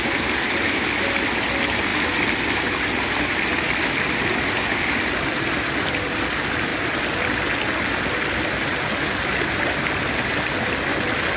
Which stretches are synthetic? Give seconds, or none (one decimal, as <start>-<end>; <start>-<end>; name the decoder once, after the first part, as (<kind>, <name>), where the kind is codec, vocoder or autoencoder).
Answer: none